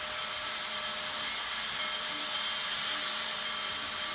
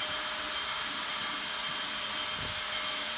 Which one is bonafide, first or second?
first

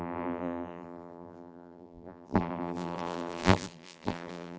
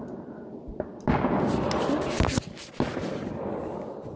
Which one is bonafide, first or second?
second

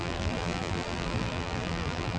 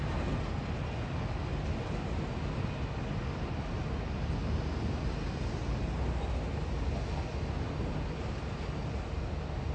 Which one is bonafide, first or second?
second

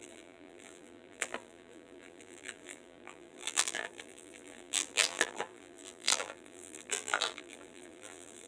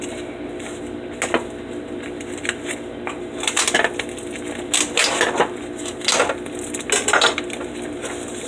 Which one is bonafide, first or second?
second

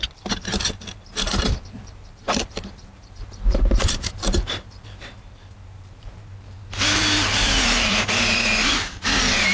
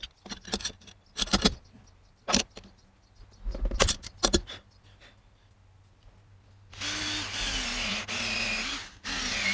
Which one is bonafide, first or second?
second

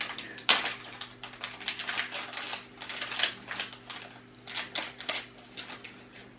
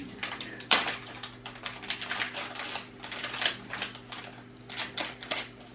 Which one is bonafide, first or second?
first